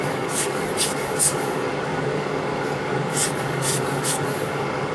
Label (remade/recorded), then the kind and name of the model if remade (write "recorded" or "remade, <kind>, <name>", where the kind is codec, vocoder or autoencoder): remade, codec, DAC